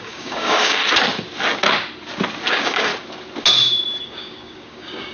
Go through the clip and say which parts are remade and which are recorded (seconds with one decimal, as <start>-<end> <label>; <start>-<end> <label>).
0.0-0.8 remade; 0.8-2.5 recorded; 2.5-2.9 remade; 2.9-4.0 recorded; 4.0-5.1 remade